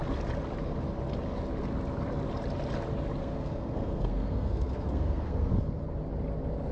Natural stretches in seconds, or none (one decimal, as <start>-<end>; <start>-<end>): 0.0-3.2; 5.5-6.7